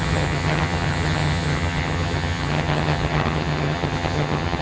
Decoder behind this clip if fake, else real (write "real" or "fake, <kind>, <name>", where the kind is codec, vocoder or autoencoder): fake, vocoder, HiFi-GAN